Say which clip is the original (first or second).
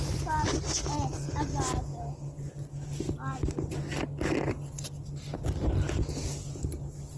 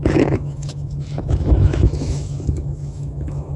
first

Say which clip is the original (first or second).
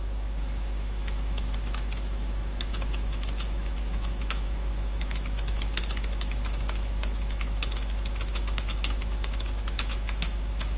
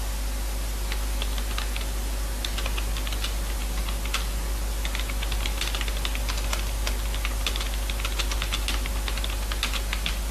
second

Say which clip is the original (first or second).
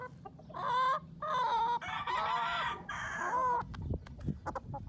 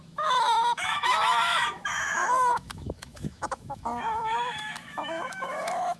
first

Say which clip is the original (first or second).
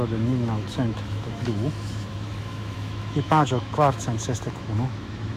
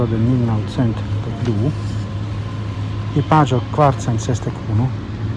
second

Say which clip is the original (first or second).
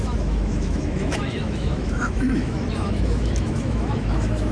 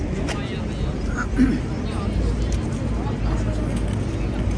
second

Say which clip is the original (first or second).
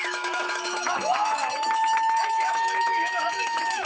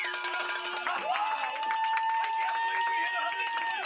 second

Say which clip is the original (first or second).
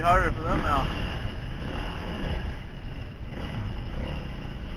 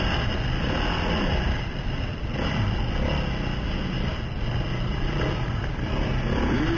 second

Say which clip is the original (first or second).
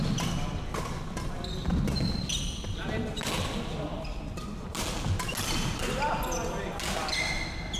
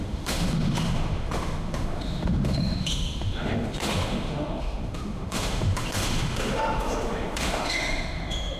first